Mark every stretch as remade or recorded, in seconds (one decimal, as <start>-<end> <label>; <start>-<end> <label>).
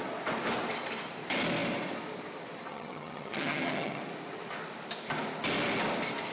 0.0-2.7 recorded; 2.7-4.0 remade; 4.0-6.3 recorded